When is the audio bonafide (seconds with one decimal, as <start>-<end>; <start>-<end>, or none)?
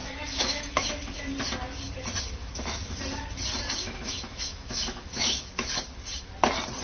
1.2-2.4; 3.0-3.8; 5.7-6.8